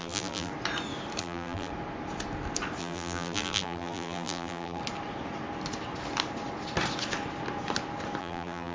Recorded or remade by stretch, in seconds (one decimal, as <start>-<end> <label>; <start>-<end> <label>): 0.0-0.5 remade; 0.5-1.2 recorded; 1.2-1.7 remade; 1.7-2.8 recorded; 2.8-4.8 remade; 4.8-8.2 recorded; 8.2-8.7 remade